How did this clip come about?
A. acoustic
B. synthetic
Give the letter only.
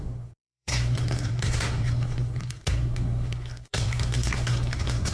B